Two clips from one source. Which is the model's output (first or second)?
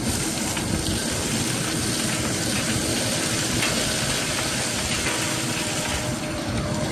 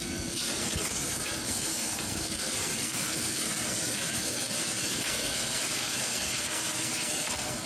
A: second